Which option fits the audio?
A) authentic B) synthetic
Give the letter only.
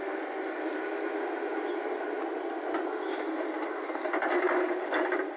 A